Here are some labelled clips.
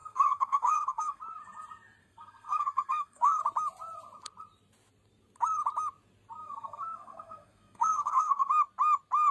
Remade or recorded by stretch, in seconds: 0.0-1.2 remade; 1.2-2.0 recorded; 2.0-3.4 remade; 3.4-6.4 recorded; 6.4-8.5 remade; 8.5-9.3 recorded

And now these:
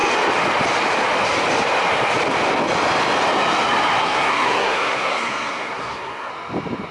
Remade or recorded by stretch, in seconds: 0.0-4.0 recorded; 4.0-6.3 remade; 6.3-6.9 recorded